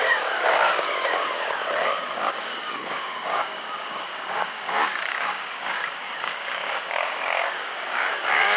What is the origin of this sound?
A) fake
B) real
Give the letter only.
A